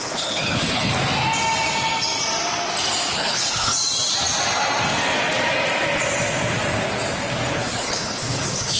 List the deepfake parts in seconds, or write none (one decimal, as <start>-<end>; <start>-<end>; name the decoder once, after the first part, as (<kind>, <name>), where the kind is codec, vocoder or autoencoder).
0.0-0.9 (codec, HILCodec); 3.1-3.7; 7.5-8.8